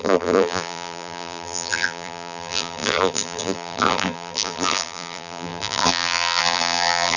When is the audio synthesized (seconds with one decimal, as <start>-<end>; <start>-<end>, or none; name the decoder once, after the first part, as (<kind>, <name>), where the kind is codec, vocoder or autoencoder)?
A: 0.0-7.2 (vocoder, BigVGAN v2)